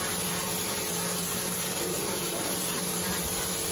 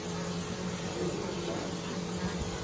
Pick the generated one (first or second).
first